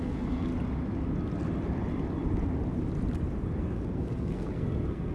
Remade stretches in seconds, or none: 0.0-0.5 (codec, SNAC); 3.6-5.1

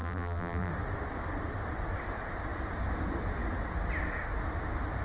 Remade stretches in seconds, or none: 0.0-0.7 (vocoder, BigVGAN v2)